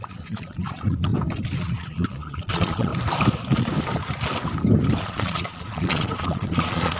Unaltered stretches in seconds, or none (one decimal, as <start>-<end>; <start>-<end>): 1.1-1.6; 2.9-5.0